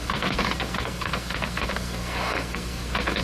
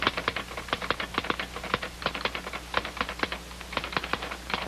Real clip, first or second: second